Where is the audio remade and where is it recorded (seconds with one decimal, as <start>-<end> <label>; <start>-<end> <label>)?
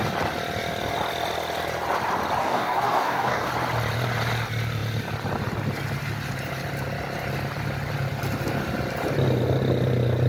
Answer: 0.0-2.4 recorded; 2.4-3.5 remade; 3.5-10.3 recorded